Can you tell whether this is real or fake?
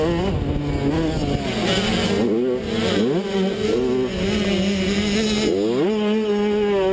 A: real